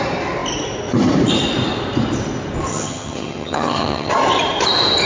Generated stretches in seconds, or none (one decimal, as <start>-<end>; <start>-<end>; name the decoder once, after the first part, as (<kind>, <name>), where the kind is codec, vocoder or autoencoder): 2.7-4.1 (vocoder, HiFi-GAN)